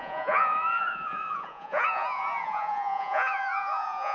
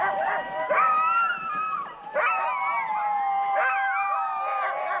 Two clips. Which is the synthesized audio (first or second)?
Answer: first